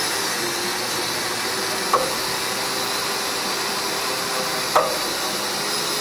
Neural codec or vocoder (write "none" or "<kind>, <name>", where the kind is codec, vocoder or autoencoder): none